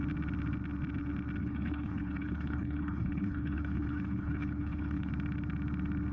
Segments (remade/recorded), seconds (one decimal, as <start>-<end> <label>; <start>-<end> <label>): 0.0-1.4 recorded; 1.4-5.1 remade; 5.1-6.1 recorded